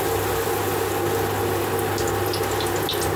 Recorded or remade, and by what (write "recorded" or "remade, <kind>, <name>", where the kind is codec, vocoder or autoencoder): recorded